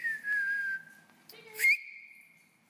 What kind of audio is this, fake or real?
real